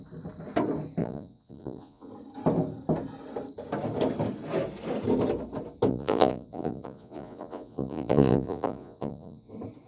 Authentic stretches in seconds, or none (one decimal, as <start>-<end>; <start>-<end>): 0.0-1.0; 2.1-5.9; 9.5-9.9